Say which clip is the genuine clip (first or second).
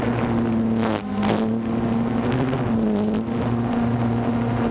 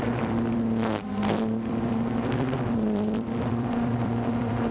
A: first